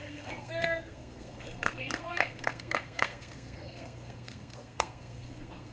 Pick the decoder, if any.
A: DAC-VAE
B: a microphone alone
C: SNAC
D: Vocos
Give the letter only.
C